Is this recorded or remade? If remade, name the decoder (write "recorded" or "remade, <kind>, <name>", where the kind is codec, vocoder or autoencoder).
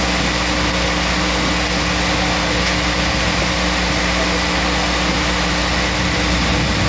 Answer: recorded